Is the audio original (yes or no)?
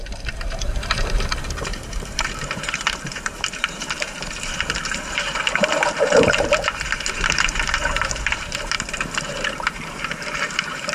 no